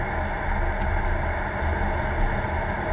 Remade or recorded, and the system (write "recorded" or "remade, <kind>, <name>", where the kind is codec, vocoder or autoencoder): recorded